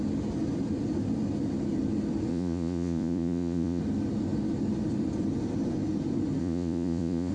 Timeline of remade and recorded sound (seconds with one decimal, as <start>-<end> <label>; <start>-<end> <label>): 0.0-2.3 recorded; 2.3-3.8 remade; 3.8-6.4 recorded; 6.4-7.3 remade

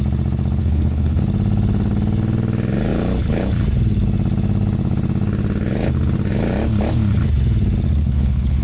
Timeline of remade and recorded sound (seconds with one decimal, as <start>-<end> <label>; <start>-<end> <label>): 0.0-0.6 recorded; 0.6-1.2 remade; 1.2-8.0 recorded; 8.0-8.6 remade

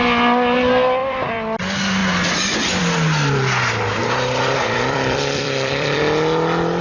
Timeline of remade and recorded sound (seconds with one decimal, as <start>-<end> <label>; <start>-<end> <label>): 0.0-1.0 recorded; 1.0-1.6 remade; 1.6-4.0 recorded; 4.0-6.0 remade; 6.0-6.8 recorded

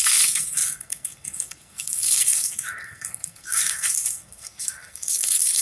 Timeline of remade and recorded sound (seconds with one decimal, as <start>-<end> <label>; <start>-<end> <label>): 0.0-5.6 remade

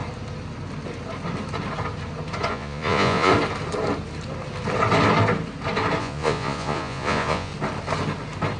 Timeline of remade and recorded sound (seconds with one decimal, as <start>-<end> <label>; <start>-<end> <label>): 0.0-2.5 recorded; 2.5-3.3 remade; 3.3-6.0 recorded; 6.0-7.5 remade; 7.5-8.6 recorded